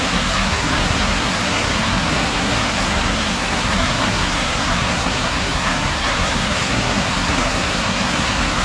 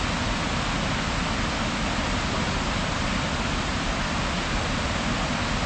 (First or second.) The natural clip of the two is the second